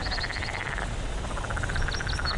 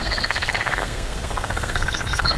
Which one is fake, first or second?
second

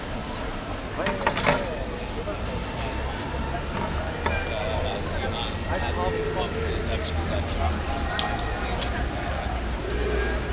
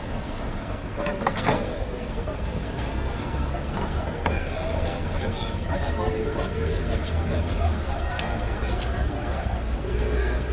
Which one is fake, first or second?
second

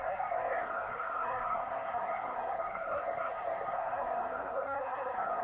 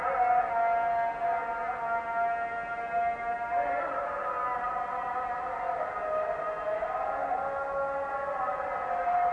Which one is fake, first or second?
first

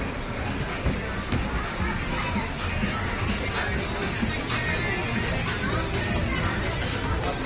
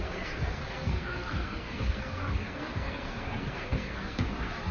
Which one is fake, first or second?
second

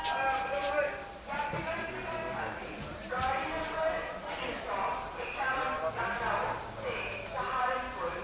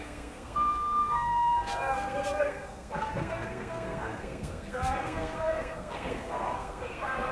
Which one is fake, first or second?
second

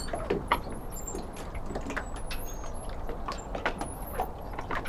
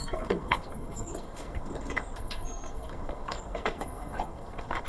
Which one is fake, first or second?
second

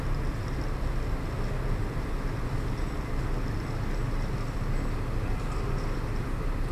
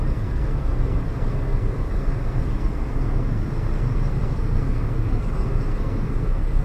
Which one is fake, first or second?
second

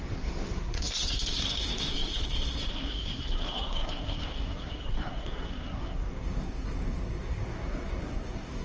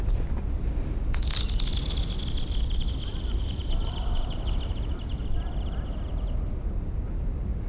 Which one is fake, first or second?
first